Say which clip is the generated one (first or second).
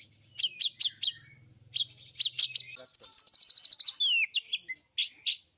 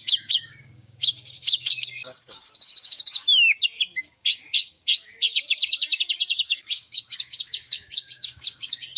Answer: second